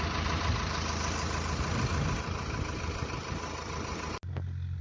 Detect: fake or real real